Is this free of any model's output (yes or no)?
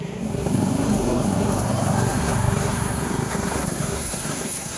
no